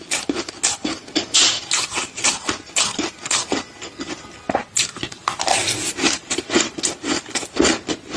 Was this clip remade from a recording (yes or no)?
no